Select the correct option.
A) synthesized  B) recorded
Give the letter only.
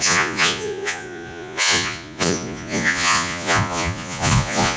A